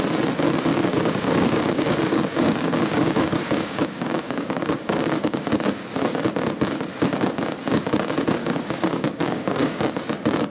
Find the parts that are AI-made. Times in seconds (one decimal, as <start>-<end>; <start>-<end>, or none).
0.7-5.4; 8.4-9.9